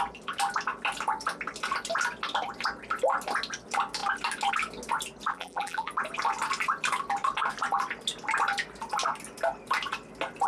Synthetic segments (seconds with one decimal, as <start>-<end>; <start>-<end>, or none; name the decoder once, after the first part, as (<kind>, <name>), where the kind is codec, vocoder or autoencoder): 5.3-5.9 (vocoder, BigVGAN v2)